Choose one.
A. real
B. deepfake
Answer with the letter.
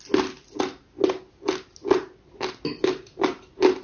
A